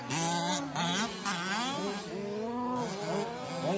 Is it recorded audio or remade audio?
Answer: recorded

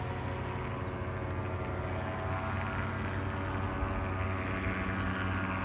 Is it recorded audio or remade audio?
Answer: recorded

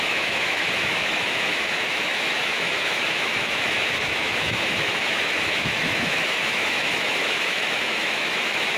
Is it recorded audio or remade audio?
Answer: remade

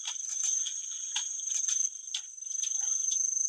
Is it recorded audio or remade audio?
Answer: recorded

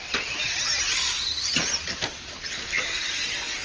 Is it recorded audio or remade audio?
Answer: recorded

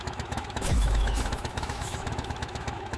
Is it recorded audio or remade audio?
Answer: remade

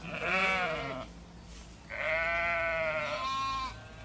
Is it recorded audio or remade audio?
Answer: recorded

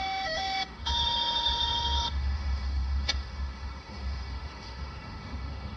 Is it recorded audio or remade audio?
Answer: remade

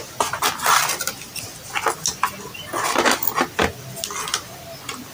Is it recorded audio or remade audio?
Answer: recorded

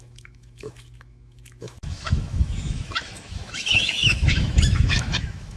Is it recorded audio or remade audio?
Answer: remade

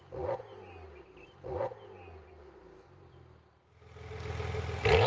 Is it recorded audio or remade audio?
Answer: recorded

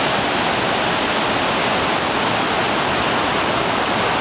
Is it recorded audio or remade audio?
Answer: recorded